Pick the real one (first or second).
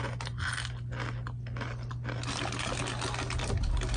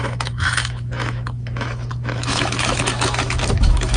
first